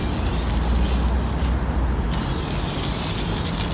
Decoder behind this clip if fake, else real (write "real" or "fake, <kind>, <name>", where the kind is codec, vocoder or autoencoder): real